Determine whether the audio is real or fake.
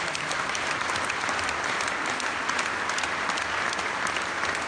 real